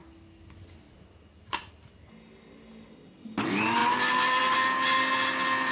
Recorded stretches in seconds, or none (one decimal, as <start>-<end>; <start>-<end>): 0.0-5.7